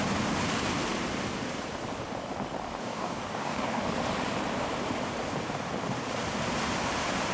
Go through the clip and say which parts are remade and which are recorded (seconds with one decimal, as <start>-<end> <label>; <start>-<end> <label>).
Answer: 0.0-2.8 recorded; 2.8-3.8 remade; 3.8-7.3 recorded